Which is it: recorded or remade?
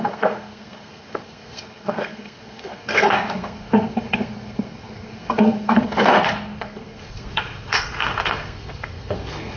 remade